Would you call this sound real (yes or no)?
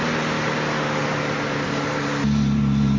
yes